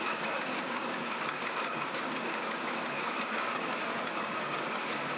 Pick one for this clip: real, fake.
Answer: fake